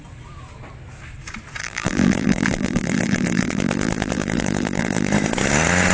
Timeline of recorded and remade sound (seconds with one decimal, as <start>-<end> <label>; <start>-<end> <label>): 0.0-1.6 recorded; 1.6-5.1 remade; 5.1-5.9 recorded